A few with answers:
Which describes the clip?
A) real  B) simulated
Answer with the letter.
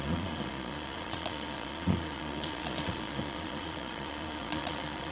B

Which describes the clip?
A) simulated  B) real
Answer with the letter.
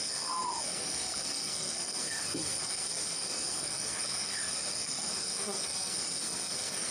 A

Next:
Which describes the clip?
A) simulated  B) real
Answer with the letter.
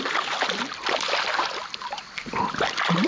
B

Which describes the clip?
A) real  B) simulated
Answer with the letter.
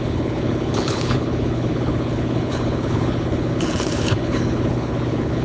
B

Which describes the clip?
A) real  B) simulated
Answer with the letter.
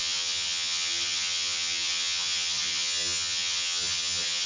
B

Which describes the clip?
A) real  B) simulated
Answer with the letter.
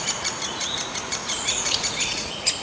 B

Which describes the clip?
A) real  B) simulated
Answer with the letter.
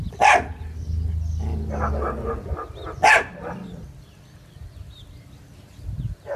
A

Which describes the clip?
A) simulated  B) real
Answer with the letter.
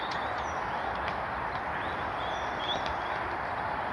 B